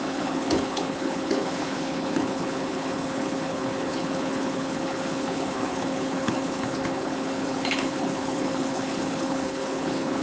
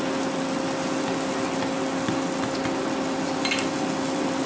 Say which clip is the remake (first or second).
first